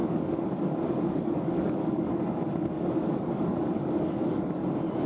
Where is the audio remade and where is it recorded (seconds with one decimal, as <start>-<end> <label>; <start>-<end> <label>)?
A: 0.0-4.6 remade; 4.6-5.1 recorded